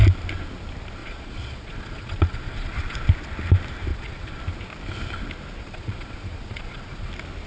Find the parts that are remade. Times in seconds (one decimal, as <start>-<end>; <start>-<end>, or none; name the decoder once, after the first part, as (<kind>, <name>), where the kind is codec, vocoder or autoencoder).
1.0-3.0 (vocoder, Vocos); 3.9-4.4; 5.6-7.1